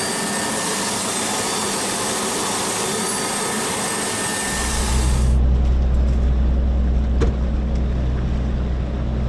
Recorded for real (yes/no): yes